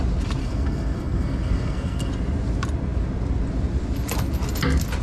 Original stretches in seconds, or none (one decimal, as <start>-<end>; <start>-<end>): 0.0-0.4; 2.1-5.0